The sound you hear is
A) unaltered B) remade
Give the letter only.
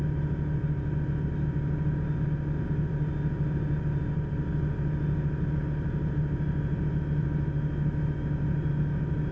A